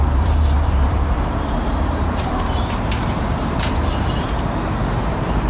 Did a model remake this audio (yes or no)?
yes